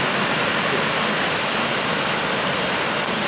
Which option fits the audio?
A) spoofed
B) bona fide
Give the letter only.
B